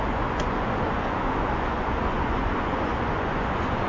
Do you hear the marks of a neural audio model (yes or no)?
yes